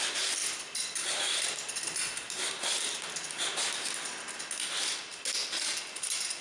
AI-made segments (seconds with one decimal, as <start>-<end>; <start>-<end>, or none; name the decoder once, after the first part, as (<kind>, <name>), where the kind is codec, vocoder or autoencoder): none